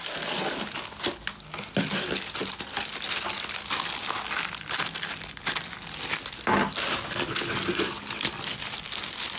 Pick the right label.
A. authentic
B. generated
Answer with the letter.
A